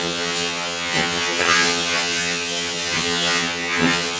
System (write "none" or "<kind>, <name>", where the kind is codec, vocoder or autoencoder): vocoder, HiFi-GAN